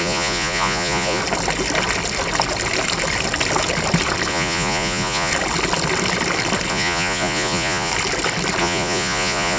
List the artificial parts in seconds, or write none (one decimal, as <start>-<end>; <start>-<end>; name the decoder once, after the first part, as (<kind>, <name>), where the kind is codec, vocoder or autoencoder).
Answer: 0.0-1.2 (vocoder, Vocos); 4.3-5.3; 6.7-7.9; 8.6-9.6